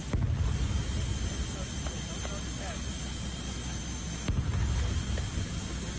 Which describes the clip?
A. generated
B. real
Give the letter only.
B